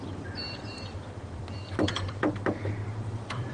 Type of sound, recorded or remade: remade